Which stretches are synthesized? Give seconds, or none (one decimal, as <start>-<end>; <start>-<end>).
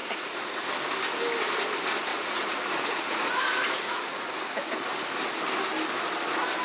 0.0-0.7; 2.1-4.3